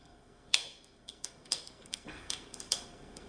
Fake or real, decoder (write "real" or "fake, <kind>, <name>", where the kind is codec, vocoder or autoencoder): fake, codec, SNAC